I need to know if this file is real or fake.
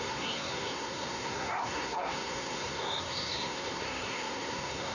fake